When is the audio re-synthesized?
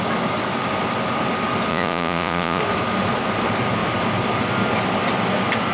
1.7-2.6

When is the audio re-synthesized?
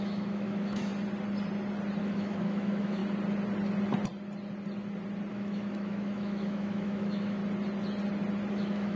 0.0-0.9; 2.0-3.0; 5.3-7.4; 8.5-9.0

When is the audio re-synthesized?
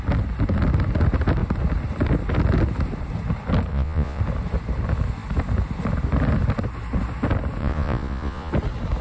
3.7-4.2; 7.6-8.5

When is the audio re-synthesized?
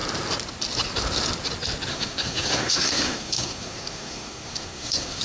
1.9-5.2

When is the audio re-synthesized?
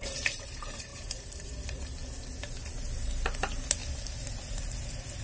0.0-2.0; 2.7-3.8; 4.5-5.2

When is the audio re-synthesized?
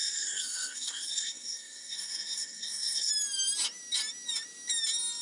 0.0-3.1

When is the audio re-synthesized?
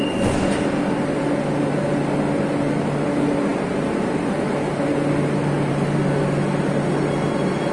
none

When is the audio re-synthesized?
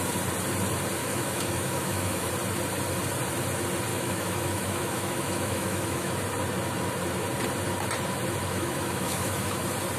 1.0-2.3; 3.9-6.1; 8.4-9.6